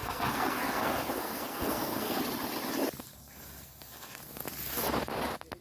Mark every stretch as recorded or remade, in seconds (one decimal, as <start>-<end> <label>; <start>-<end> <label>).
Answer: 0.0-2.2 remade; 2.2-3.0 recorded; 3.0-4.4 remade; 4.4-5.6 recorded